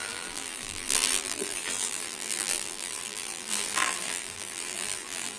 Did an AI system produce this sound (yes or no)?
yes